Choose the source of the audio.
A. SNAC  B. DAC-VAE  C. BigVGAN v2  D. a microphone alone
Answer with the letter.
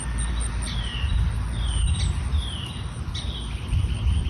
D